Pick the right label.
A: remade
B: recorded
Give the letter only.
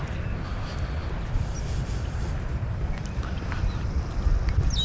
B